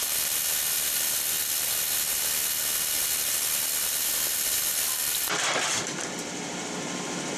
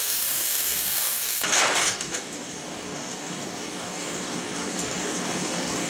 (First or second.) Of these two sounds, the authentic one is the first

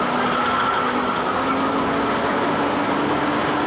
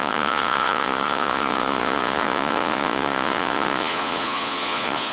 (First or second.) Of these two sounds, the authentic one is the first